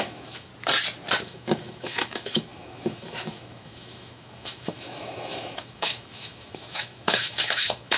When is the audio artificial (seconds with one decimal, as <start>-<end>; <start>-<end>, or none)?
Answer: 0.0-0.5; 1.2-8.0